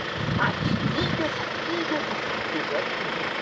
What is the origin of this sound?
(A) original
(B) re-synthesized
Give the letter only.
B